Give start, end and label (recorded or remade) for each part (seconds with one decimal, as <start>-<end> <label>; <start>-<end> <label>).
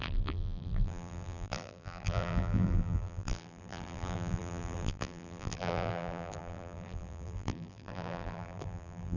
0.0-9.2 remade